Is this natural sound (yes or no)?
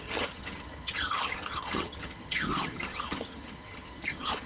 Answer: no